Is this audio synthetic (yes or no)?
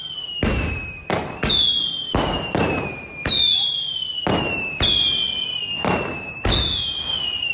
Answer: no